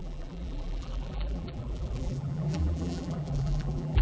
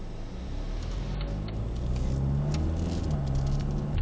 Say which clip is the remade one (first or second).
first